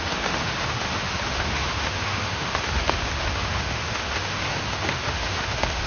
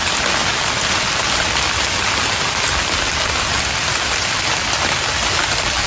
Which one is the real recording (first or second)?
second